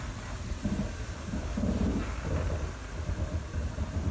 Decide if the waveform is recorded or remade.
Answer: recorded